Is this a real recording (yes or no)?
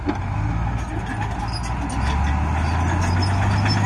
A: yes